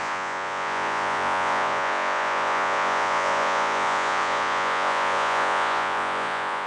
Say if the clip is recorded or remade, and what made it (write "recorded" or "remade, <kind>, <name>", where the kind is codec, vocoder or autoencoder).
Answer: remade, vocoder, Vocos